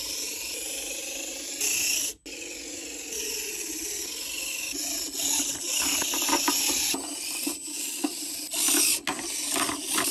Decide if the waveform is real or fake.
real